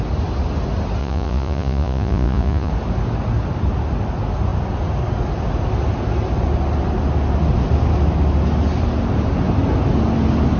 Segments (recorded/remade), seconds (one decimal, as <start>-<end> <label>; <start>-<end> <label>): 0.0-1.0 recorded; 1.0-2.7 remade; 2.7-10.6 recorded